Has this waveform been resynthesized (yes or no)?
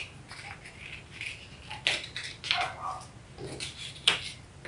no